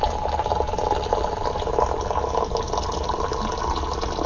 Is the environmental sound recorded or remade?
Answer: recorded